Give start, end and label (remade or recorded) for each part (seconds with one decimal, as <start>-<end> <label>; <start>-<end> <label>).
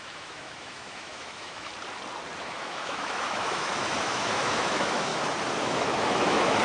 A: 0.0-1.7 remade; 1.7-2.4 recorded; 2.4-5.1 remade; 5.1-5.6 recorded; 5.6-6.6 remade